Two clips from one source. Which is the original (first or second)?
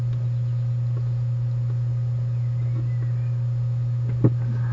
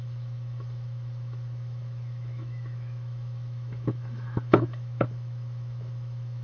first